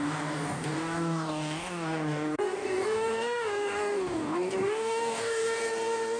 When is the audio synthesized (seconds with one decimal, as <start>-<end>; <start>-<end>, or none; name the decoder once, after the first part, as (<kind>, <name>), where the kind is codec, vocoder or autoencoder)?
0.0-5.6 (codec, DAC)